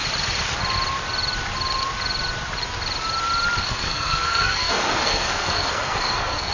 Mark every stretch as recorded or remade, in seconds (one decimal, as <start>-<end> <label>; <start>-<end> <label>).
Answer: 0.0-3.6 recorded; 3.6-6.5 remade